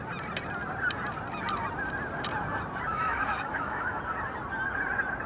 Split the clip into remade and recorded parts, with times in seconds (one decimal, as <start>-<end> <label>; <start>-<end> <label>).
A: 0.0-2.9 recorded; 2.9-4.0 remade; 4.0-5.3 recorded